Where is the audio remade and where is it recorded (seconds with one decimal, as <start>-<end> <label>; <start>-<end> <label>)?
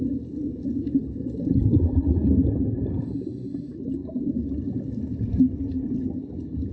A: 0.0-6.7 recorded